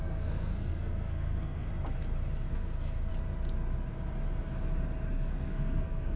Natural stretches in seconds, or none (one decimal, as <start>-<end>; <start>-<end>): 1.7-2.5; 3.1-5.1